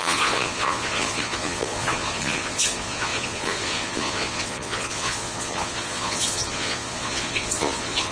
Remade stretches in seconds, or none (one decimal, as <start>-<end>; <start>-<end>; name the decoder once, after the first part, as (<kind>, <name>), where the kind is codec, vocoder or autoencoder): 0.0-8.1 (vocoder, Vocos)